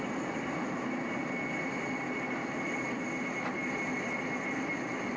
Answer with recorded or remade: recorded